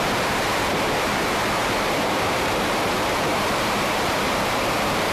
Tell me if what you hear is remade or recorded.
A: remade